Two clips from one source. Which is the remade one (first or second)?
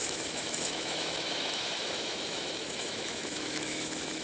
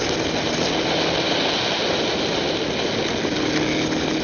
first